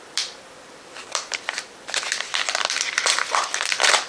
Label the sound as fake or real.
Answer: fake